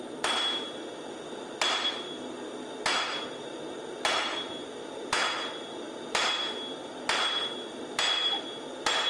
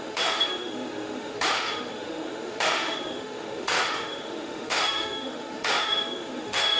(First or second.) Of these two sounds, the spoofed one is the second